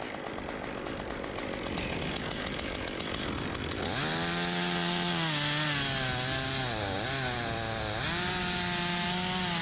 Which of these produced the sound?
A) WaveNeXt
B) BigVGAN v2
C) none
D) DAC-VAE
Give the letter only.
C